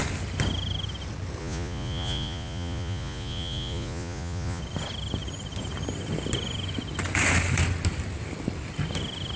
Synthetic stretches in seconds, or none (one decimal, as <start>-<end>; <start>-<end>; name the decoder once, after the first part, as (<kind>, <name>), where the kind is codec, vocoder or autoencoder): 1.4-4.6 (vocoder, Vocos)